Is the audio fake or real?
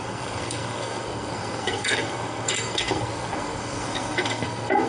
fake